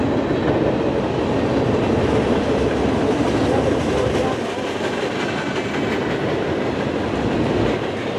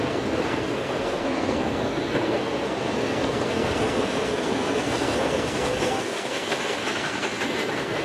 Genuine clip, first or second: first